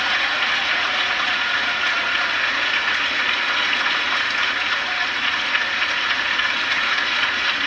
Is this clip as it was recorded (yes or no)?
no